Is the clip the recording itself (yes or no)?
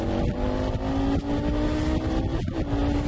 yes